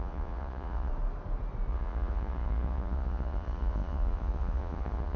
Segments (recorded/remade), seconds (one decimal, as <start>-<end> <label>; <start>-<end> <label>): 0.0-0.9 remade; 0.9-1.7 recorded; 1.7-5.2 remade

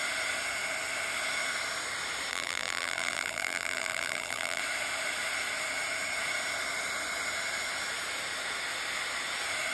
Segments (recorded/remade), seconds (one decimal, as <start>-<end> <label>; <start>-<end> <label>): 0.0-2.3 recorded; 2.3-4.6 remade; 4.6-9.7 recorded

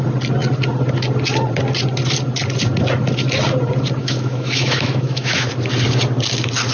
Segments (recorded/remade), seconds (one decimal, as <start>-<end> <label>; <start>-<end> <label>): 0.0-4.0 recorded; 4.0-5.5 remade; 5.5-6.7 recorded

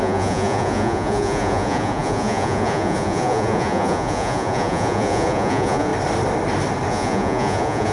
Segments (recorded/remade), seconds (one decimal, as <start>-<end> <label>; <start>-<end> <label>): 0.0-5.9 remade; 5.9-6.9 recorded; 6.9-7.9 remade

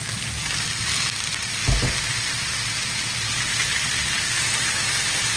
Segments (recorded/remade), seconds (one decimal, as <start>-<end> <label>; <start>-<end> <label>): 0.0-5.4 recorded

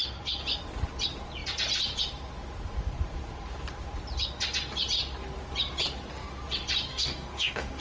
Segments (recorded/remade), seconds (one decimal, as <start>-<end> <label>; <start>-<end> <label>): 0.0-6.9 recorded; 6.9-7.8 remade

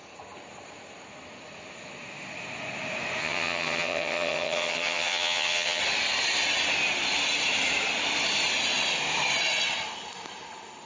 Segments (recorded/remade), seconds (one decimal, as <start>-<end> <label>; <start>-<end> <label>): 0.0-3.2 recorded; 3.2-5.8 remade; 5.8-10.8 recorded

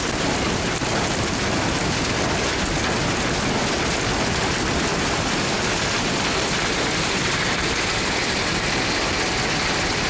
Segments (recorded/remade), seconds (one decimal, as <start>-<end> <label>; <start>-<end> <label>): 0.0-4.9 recorded; 4.9-8.7 remade; 8.7-10.1 recorded